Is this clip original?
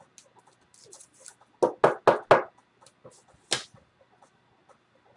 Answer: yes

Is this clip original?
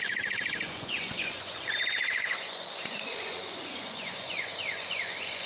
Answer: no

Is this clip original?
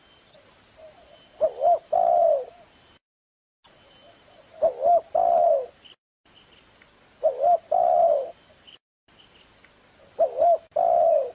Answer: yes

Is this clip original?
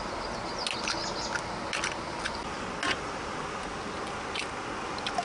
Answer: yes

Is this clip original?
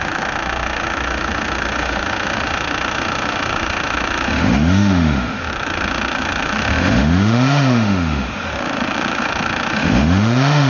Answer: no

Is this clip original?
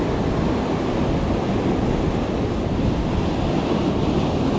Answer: yes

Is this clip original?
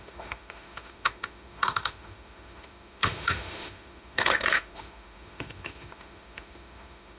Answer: no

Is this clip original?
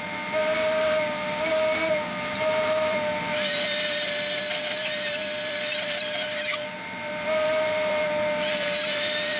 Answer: no